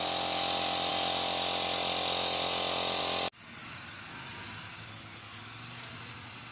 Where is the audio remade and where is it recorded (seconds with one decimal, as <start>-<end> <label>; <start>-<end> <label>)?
0.0-6.5 recorded

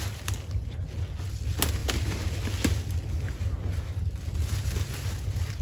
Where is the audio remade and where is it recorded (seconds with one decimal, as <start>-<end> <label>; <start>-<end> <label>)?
0.0-5.6 recorded

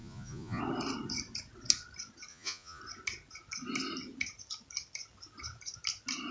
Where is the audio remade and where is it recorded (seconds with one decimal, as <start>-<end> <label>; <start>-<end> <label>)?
0.0-0.6 remade; 0.6-2.3 recorded; 2.3-2.8 remade; 2.8-6.3 recorded

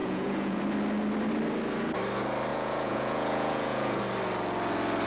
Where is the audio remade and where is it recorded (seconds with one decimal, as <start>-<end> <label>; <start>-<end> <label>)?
0.0-0.6 remade; 0.6-2.5 recorded; 2.5-4.0 remade; 4.0-5.1 recorded

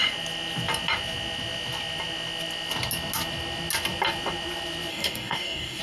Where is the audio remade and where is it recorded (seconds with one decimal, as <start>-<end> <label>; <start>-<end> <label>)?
0.0-4.9 recorded; 4.9-5.8 remade

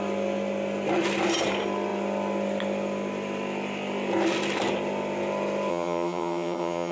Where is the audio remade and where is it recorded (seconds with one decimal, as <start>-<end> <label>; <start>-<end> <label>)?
0.0-5.7 recorded; 5.7-6.9 remade